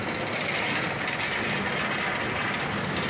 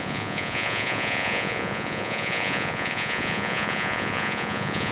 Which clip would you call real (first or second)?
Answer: first